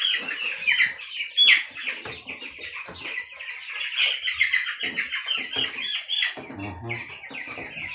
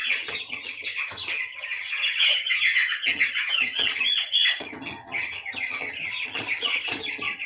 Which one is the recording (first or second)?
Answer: first